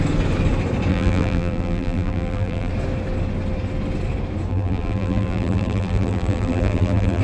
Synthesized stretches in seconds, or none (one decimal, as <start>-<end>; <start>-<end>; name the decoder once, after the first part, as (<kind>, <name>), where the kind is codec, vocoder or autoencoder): 0.9-2.7 (vocoder, BigVGAN v2); 4.5-7.2